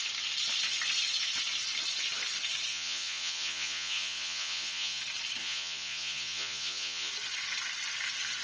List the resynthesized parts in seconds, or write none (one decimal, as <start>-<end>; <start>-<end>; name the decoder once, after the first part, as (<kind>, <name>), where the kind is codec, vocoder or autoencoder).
2.7-5.0 (vocoder, Vocos); 5.4-7.1